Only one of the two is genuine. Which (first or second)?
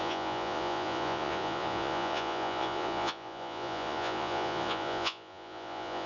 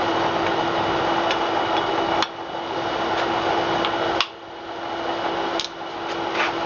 second